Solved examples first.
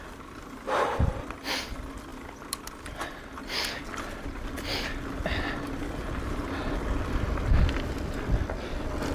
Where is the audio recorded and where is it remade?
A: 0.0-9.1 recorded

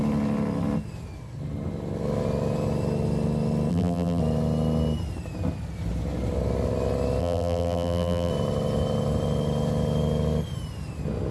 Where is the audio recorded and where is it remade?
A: 0.0-3.7 recorded; 3.7-4.2 remade; 4.2-7.2 recorded; 7.2-8.3 remade; 8.3-11.3 recorded

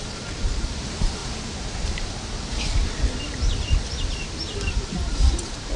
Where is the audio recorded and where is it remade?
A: 0.0-1.2 remade; 1.2-4.7 recorded; 4.7-5.8 remade

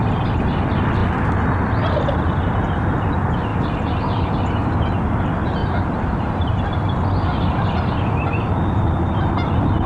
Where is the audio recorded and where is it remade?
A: 0.0-3.5 recorded; 3.5-4.7 remade; 4.7-5.6 recorded; 5.6-6.6 remade; 6.6-9.9 recorded